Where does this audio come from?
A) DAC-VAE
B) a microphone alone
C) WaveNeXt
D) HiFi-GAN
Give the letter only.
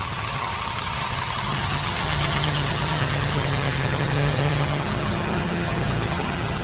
D